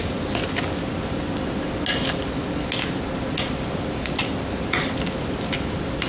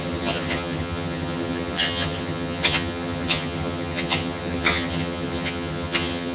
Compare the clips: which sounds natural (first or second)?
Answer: first